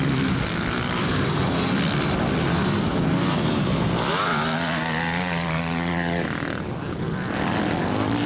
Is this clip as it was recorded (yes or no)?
yes